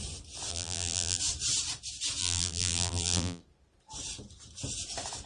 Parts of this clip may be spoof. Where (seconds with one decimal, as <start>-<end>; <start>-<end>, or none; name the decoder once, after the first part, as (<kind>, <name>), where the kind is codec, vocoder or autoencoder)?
0.5-1.2 (vocoder, BigVGAN v2); 2.2-3.4